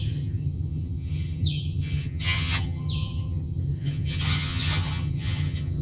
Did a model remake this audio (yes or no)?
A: yes